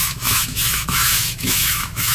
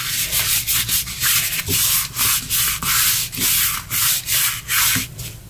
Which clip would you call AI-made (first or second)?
first